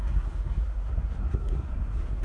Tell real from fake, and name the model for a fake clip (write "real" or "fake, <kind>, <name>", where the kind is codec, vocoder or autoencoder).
fake, codec, SNAC